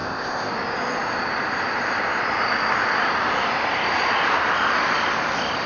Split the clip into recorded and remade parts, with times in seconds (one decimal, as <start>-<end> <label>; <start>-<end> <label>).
0.0-0.5 remade; 0.5-5.7 recorded

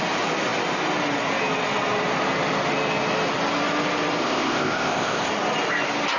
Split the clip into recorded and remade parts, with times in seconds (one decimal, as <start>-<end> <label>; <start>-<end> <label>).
0.0-4.2 recorded; 4.2-5.3 remade; 5.3-6.2 recorded

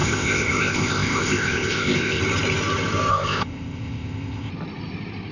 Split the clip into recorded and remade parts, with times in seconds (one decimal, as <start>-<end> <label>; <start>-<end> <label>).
0.0-2.2 remade; 2.2-3.1 recorded; 3.1-4.5 remade; 4.5-5.3 recorded